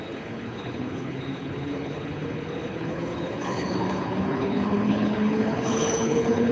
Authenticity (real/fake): fake